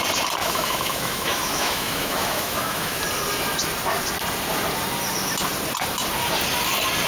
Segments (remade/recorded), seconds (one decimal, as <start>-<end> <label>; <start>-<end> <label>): 0.0-0.4 recorded; 0.4-3.0 remade; 3.0-7.1 recorded